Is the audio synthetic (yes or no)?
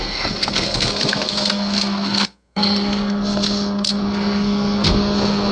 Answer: yes